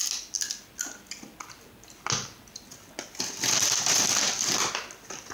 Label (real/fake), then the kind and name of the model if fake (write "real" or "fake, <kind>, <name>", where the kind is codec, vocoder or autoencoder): real